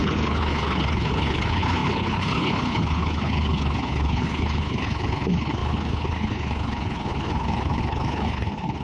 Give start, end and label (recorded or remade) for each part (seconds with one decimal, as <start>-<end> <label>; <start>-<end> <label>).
0.0-8.8 remade